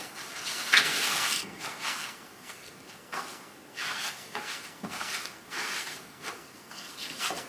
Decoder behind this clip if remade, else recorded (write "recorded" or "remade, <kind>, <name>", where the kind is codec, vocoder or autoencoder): remade, codec, SNAC